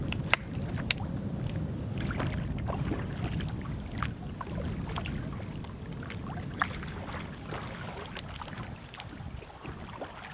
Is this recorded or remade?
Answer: recorded